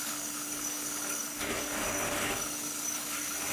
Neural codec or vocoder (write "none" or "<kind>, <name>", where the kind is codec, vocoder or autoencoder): codec, DAC